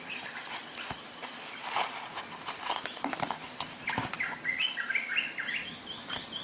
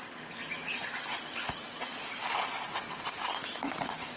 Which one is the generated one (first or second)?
first